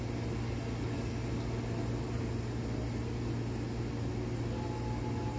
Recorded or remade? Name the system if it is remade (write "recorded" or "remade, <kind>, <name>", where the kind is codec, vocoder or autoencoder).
recorded